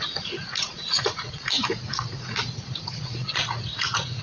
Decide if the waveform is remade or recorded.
remade